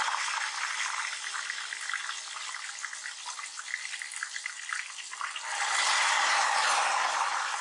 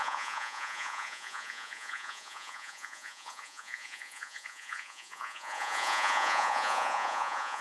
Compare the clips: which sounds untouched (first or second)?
first